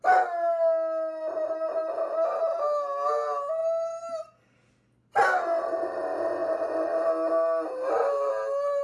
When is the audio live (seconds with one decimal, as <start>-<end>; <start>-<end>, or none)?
0.0-8.8